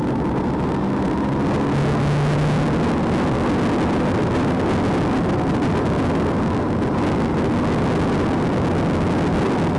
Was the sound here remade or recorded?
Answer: recorded